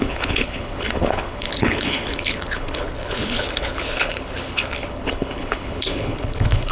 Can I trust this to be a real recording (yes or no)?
no